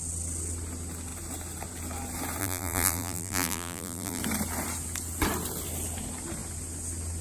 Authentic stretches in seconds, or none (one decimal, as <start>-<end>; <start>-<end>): 0.0-2.4; 4.2-7.2